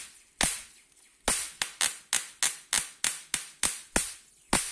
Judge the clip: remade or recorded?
recorded